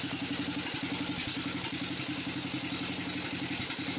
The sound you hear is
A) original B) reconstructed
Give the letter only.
A